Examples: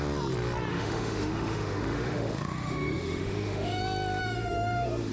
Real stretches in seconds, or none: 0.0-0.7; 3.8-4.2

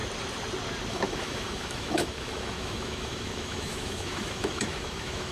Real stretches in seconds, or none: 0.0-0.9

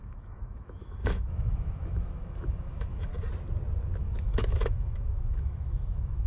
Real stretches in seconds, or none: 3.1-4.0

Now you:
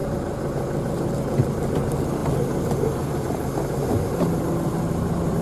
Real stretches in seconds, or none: 0.0-5.4